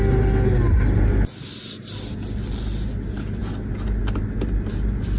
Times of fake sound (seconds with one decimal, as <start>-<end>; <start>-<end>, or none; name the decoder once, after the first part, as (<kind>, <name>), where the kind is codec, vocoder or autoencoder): none